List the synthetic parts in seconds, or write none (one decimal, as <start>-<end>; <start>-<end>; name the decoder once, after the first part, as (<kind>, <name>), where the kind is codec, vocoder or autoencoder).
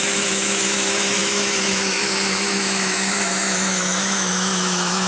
0.0-5.1 (autoencoder, DAC-VAE)